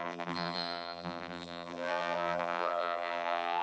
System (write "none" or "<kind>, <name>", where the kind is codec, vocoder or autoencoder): vocoder, BigVGAN v2